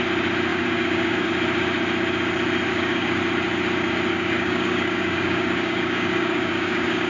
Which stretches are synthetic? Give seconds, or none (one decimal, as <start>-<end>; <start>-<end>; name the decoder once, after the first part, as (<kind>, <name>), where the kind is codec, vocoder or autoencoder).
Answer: 0.5-1.3 (codec, DAC); 2.7-3.2; 4.1-7.1